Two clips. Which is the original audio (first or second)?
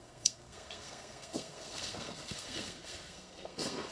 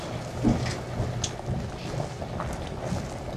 second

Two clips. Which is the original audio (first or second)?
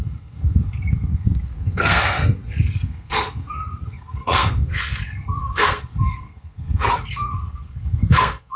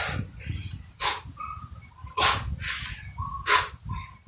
second